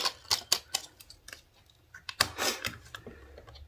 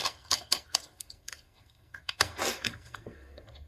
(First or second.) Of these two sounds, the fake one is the second